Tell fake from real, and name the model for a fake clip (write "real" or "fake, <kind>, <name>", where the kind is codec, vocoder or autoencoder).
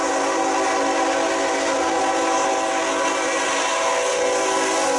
real